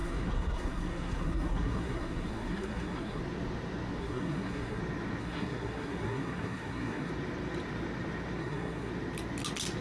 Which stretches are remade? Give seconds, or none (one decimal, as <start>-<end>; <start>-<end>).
0.0-3.2; 4.0-4.8; 5.2-7.1; 8.4-8.9